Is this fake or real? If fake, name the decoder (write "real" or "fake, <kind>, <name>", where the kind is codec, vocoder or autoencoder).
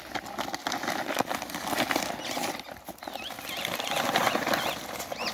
real